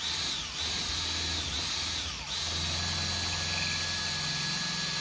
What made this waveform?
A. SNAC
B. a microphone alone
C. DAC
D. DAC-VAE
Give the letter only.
B